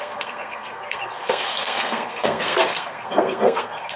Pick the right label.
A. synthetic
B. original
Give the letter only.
A